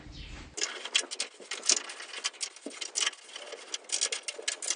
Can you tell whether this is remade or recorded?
recorded